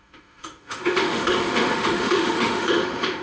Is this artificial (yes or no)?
yes